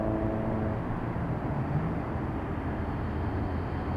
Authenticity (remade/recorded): recorded